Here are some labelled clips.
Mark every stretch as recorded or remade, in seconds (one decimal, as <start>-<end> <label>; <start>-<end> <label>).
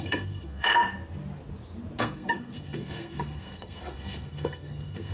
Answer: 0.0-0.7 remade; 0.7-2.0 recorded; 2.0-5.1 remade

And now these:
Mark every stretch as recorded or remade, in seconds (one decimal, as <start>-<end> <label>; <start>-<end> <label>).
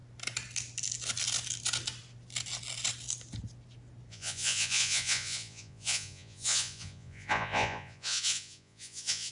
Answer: 0.0-4.1 recorded; 4.1-9.3 remade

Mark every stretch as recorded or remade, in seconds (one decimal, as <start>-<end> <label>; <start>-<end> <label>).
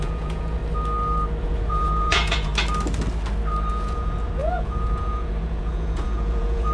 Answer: 0.0-0.6 remade; 0.6-1.4 recorded; 1.4-2.5 remade; 2.5-3.7 recorded; 3.7-6.7 remade